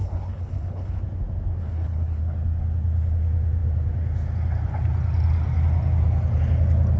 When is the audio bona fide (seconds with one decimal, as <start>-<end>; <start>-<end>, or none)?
1.0-1.6; 2.2-7.0

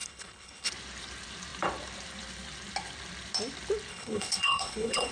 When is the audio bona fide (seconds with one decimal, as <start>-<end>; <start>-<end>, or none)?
0.7-3.9